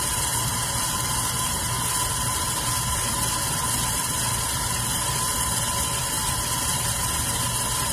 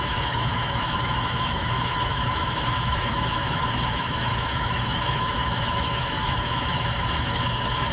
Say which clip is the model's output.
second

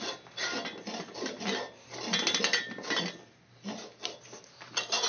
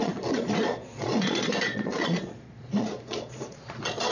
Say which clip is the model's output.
second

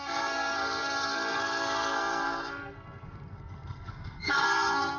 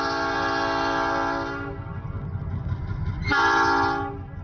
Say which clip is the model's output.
first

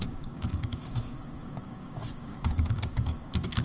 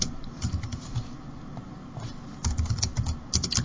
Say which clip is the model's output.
first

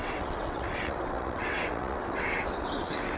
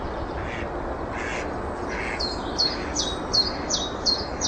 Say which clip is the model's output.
first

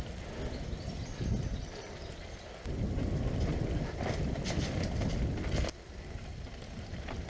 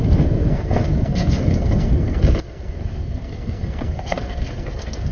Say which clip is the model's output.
second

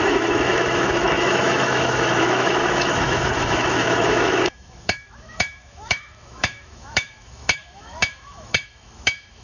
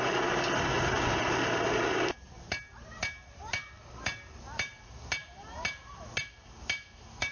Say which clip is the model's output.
first